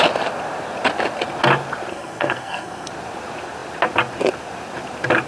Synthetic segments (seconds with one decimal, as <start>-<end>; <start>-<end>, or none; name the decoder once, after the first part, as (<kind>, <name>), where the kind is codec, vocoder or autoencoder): 1.9-2.9 (codec, SNAC)

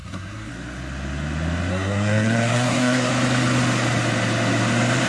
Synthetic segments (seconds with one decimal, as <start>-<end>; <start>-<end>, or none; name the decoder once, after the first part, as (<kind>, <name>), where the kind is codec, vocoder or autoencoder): 0.0-0.5 (codec, SNAC); 1.7-3.1